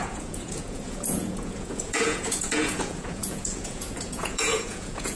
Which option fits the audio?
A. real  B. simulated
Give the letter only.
B